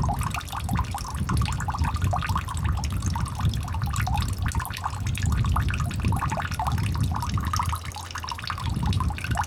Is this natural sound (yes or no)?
yes